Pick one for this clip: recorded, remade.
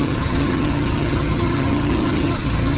remade